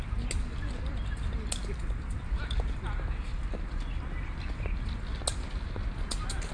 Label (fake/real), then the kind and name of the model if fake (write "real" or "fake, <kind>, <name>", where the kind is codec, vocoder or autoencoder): real